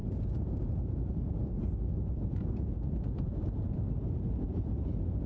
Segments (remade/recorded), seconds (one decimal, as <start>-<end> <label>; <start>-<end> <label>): 0.0-5.3 remade